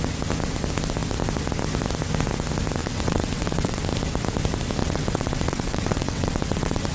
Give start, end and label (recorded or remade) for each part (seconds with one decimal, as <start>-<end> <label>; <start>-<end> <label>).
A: 0.0-2.8 recorded; 2.8-3.8 remade; 3.8-4.8 recorded; 4.8-6.9 remade